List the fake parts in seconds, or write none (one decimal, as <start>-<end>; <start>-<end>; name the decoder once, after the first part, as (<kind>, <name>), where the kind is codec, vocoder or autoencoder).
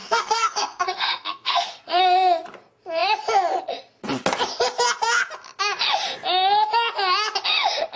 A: 0.0-2.0 (codec, SNAC)